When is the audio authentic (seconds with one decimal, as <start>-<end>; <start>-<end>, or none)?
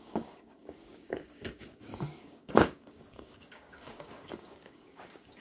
none